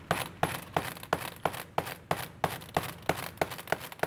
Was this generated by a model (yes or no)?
no